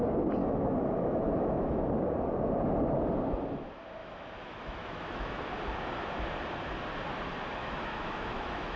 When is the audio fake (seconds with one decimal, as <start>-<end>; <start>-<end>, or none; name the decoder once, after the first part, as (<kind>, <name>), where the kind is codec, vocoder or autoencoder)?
0.4-1.9 (autoencoder, DAC-VAE); 4.0-5.4; 7.6-8.8